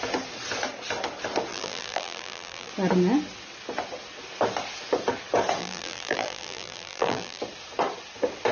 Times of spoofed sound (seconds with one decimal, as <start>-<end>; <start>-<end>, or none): 1.5-2.7; 5.6-7.4